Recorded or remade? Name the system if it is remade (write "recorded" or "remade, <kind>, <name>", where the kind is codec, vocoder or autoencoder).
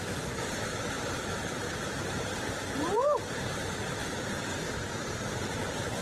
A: remade, vocoder, BigVGAN v2